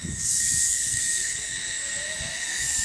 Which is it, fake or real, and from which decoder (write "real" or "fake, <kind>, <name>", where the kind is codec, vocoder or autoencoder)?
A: fake, codec, SNAC